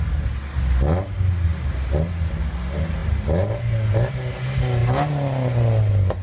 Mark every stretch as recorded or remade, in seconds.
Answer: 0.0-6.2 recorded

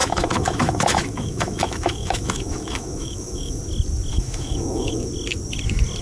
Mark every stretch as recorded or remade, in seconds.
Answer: 0.0-3.6 remade; 3.6-4.1 recorded; 4.1-5.1 remade; 5.1-6.0 recorded

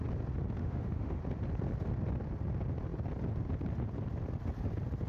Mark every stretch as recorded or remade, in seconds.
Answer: 0.0-0.6 recorded; 0.6-1.2 remade; 1.2-5.1 recorded

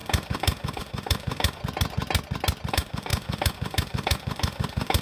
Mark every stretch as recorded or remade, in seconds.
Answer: 0.0-1.6 remade; 1.6-2.7 recorded; 2.7-5.0 remade